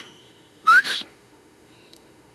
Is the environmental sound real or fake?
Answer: fake